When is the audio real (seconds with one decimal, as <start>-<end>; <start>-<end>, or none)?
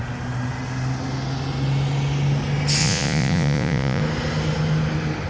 0.0-2.8; 4.0-5.3